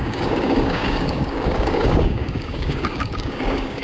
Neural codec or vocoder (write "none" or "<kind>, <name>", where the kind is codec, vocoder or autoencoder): codec, DAC